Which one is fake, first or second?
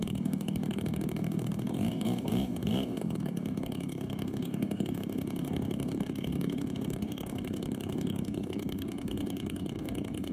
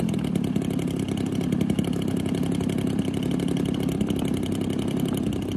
first